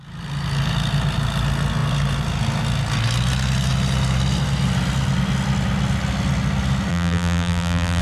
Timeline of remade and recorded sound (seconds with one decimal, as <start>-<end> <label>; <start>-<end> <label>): 0.0-6.9 recorded; 6.9-8.0 remade